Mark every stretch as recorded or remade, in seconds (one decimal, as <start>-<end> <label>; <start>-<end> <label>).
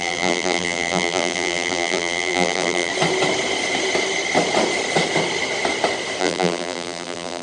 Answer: 0.0-2.9 remade; 2.9-6.2 recorded; 6.2-7.4 remade